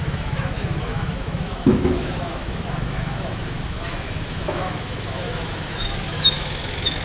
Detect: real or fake fake